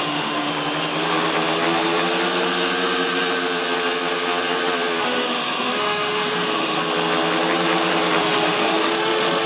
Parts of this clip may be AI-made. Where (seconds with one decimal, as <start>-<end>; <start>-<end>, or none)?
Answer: 0.0-0.5; 5.0-6.8; 8.2-9.5